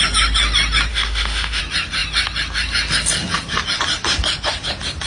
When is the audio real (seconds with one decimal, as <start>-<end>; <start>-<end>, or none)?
0.0-0.9; 1.6-5.1